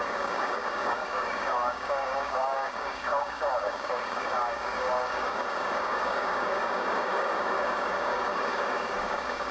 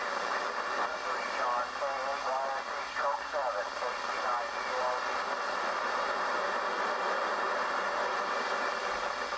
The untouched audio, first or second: second